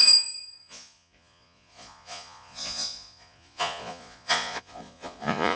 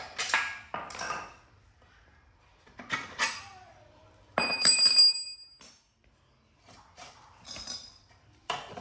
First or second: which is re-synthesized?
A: first